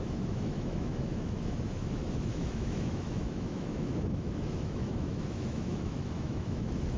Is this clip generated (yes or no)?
yes